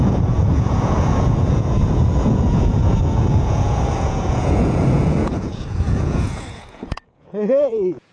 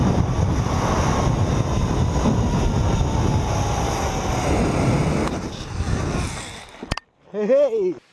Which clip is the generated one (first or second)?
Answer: first